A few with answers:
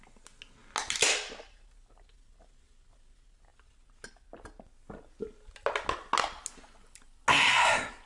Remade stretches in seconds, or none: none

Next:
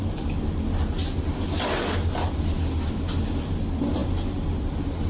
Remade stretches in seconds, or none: none

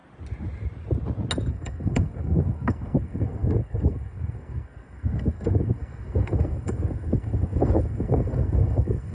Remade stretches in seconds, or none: 1.5-9.1 (codec, SNAC)

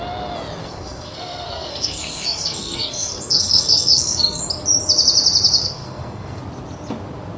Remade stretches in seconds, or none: 0.6-4.4 (codec, SNAC); 5.6-6.4

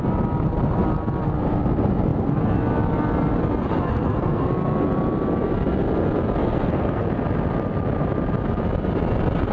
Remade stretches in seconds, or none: 3.9-4.5 (codec, SNAC); 6.4-7.1

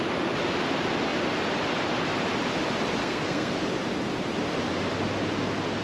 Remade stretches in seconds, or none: 3.0-3.5 (codec, SNAC)

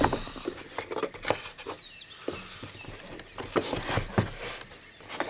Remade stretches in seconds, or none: none

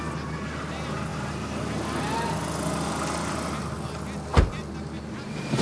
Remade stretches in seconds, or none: none